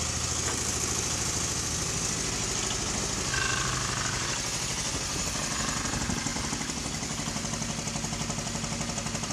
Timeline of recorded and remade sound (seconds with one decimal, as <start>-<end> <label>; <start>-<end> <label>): 0.0-6.3 recorded; 6.3-9.3 remade